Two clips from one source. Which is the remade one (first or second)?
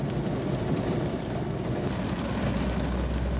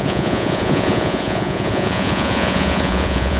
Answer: second